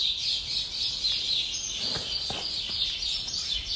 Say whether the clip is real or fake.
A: real